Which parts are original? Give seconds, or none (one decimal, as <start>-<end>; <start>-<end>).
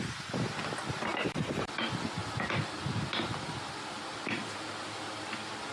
0.0-1.1; 1.8-5.7